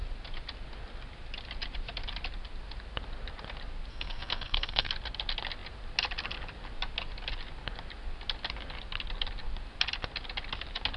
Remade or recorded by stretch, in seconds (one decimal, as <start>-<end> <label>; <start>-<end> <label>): 0.0-3.9 recorded; 3.9-4.9 remade; 4.9-11.0 recorded